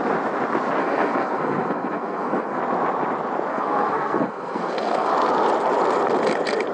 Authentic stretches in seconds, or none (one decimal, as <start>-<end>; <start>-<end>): 0.0-0.8; 2.6-3.5; 5.1-6.7